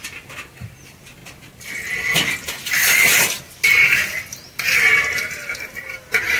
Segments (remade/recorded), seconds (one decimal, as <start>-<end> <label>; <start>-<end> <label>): 0.0-6.4 recorded